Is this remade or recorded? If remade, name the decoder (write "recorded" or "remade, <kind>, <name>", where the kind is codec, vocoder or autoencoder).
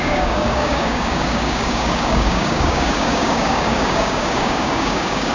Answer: remade, codec, DAC